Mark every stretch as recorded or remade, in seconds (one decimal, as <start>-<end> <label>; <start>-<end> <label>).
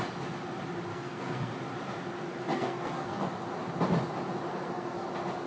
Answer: 0.0-0.9 recorded; 0.9-1.5 remade; 1.5-2.5 recorded; 2.5-3.2 remade; 3.2-4.5 recorded; 4.5-5.1 remade; 5.1-5.5 recorded